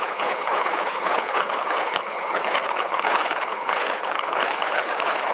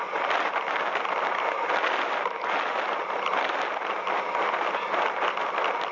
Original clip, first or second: second